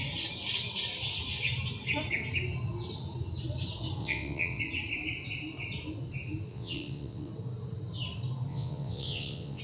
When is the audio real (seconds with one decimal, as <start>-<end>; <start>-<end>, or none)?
0.0-4.0; 4.6-6.5; 7.3-8.5